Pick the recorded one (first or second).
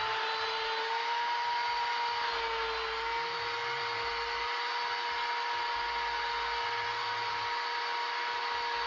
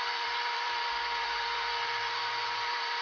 first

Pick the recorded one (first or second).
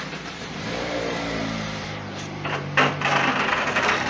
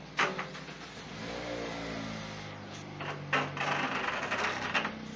second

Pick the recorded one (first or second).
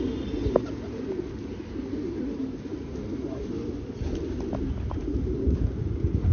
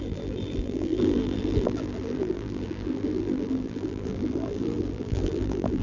first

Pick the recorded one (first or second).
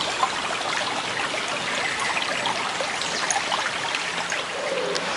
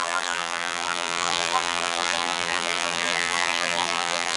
first